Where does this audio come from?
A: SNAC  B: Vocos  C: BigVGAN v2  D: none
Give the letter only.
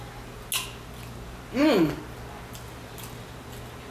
D